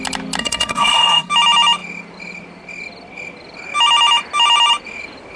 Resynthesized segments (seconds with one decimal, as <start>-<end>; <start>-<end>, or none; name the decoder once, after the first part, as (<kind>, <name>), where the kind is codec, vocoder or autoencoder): 0.4-1.3 (codec, SNAC)